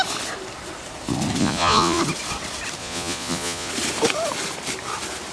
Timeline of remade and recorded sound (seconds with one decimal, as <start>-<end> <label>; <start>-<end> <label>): 0.0-1.4 recorded; 1.4-2.0 remade; 2.0-2.8 recorded; 2.8-3.7 remade; 3.7-5.3 recorded